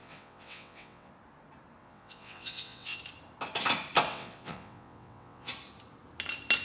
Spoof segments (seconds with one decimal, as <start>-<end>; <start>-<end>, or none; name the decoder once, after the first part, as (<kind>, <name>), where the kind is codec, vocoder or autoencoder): 0.0-1.1 (vocoder, WaveNeXt); 1.8-3.0; 4.1-5.5